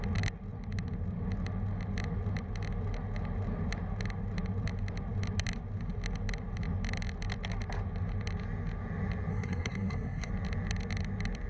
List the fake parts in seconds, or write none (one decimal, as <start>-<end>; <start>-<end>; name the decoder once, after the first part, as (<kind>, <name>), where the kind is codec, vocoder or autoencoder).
9.3-10.3 (codec, SNAC)